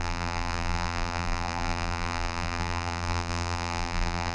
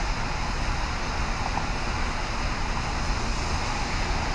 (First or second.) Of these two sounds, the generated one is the first